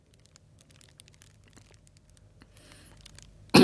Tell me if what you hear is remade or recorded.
recorded